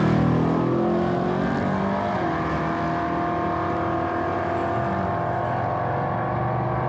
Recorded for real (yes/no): yes